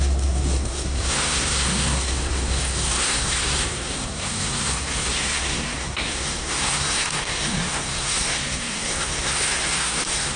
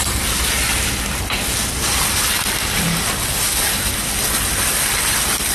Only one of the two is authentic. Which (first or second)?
second